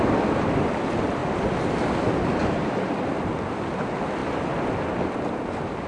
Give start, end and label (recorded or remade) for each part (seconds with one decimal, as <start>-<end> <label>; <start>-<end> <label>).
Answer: 0.0-2.4 recorded; 2.4-3.1 remade; 3.1-5.9 recorded